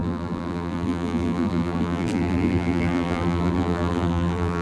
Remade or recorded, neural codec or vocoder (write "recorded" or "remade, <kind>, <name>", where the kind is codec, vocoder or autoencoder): remade, vocoder, BigVGAN v2